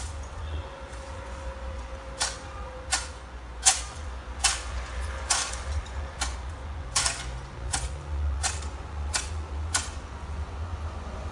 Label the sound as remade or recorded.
remade